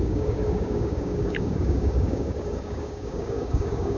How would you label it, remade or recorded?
remade